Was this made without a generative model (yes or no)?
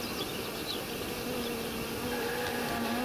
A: yes